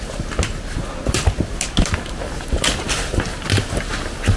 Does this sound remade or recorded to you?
recorded